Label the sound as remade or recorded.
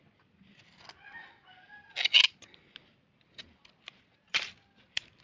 recorded